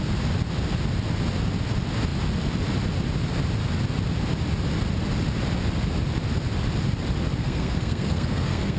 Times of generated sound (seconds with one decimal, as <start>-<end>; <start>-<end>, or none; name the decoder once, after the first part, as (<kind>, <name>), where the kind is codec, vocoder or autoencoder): 7.4-8.8 (codec, SNAC)